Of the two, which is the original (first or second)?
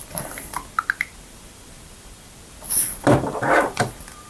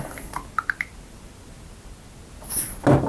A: second